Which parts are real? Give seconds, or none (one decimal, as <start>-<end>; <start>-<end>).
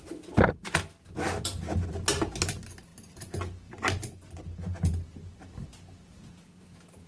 0.0-7.1